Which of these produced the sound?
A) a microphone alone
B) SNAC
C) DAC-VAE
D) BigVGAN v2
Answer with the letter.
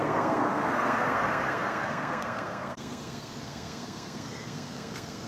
B